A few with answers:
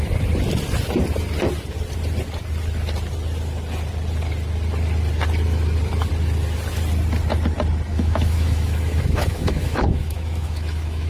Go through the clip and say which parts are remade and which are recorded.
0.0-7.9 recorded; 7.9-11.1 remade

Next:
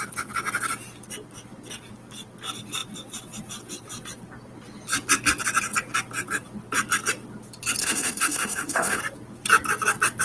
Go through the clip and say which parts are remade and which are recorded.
0.0-7.8 recorded; 7.8-9.0 remade; 9.0-10.2 recorded

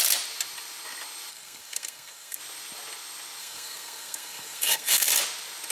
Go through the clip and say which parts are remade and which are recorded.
0.0-1.3 recorded; 1.3-2.4 remade; 2.4-3.4 recorded; 3.4-5.1 remade; 5.1-5.7 recorded